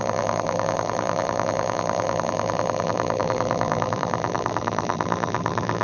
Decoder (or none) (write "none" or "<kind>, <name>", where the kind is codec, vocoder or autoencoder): vocoder, BigVGAN v2